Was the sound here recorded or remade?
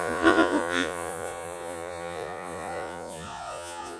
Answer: remade